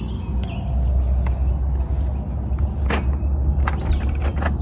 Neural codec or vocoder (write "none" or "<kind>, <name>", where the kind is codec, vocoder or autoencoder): none